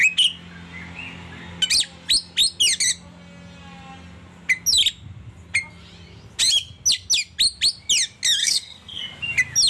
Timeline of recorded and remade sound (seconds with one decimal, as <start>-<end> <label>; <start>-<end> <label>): 0.0-8.4 recorded; 8.4-9.0 remade; 9.0-9.7 recorded